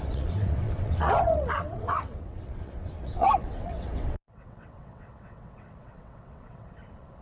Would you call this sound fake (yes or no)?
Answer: yes